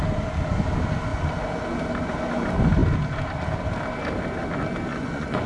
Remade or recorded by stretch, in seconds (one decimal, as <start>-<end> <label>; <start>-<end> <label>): 0.0-4.9 recorded; 4.9-5.5 remade